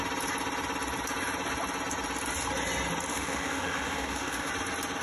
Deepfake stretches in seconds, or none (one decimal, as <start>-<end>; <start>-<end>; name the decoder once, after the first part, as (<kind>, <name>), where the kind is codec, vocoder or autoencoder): 3.1-4.5 (autoencoder, DAC-VAE)